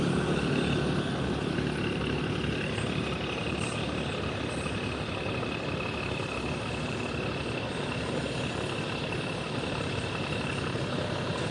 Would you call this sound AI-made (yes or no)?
no